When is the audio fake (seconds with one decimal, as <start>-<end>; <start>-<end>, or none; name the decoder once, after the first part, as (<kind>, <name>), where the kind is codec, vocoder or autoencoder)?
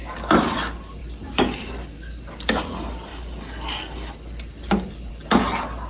none